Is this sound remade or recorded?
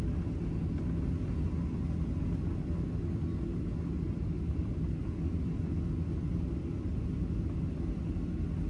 recorded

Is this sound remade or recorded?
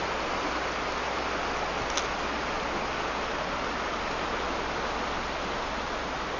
recorded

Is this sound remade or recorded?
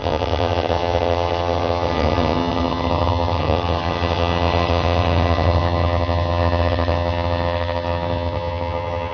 remade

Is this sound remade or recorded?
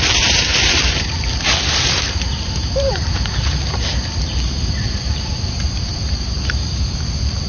remade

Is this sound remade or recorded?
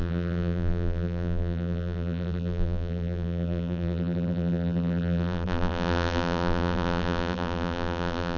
remade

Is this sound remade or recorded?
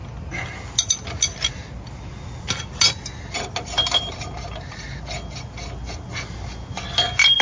recorded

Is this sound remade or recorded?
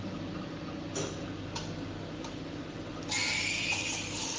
recorded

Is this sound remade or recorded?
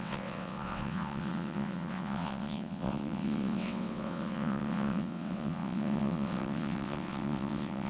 remade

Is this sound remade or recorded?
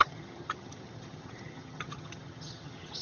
remade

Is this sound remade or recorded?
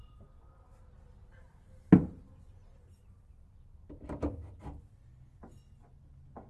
recorded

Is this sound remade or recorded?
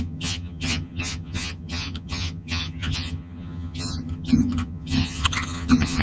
remade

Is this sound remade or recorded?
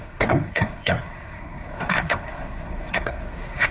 remade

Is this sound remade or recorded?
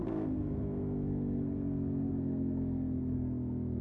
remade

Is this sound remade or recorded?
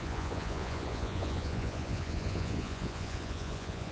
remade